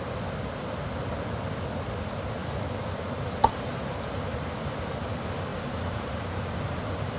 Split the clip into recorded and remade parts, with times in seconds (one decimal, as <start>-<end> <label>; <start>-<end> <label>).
0.0-5.5 recorded; 5.5-6.8 remade; 6.8-7.2 recorded